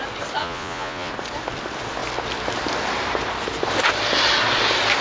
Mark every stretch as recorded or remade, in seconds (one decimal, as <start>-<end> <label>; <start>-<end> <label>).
0.0-0.4 recorded; 0.4-1.1 remade; 1.1-5.0 recorded